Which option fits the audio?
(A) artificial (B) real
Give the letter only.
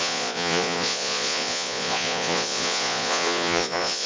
A